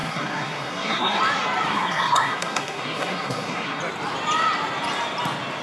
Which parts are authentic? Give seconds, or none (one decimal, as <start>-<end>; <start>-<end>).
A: 1.2-1.7; 3.8-5.6